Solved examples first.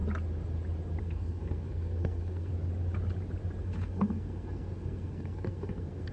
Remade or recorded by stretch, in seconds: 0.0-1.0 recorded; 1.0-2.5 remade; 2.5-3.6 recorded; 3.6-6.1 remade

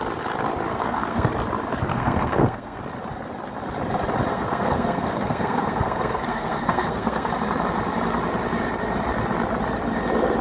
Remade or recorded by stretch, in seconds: 0.0-0.7 recorded; 0.7-1.3 remade; 1.3-1.9 recorded; 1.9-2.8 remade; 2.8-4.3 recorded; 4.3-7.3 remade; 7.3-10.4 recorded